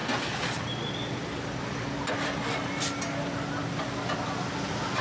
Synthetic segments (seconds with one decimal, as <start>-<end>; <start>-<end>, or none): none